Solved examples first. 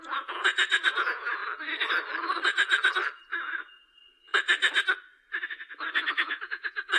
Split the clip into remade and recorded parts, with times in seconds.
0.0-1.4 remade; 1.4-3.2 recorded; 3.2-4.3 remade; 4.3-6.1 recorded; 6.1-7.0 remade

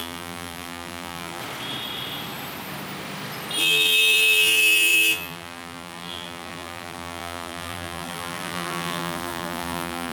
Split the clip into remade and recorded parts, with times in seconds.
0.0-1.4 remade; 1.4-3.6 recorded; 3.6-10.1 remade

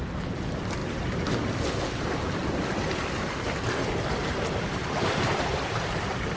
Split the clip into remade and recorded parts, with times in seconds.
0.0-6.4 remade

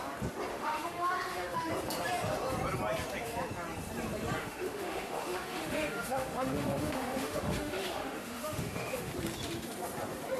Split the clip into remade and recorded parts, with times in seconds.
0.0-0.5 recorded; 0.5-1.7 remade; 1.7-4.4 recorded; 4.4-9.1 remade; 9.1-10.4 recorded